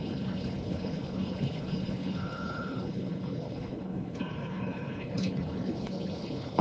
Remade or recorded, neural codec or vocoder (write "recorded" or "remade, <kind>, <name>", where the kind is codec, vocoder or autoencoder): remade, codec, HILCodec